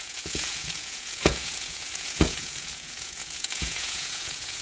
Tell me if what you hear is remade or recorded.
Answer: remade